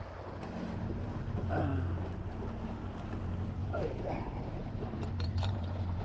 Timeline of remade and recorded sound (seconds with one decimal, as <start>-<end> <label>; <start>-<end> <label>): 0.0-3.6 recorded; 3.6-6.0 remade